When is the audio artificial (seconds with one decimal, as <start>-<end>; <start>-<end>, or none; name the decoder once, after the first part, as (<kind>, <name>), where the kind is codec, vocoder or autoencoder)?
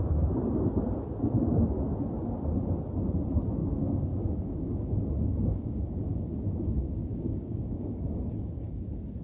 3.6-8.1 (codec, DAC)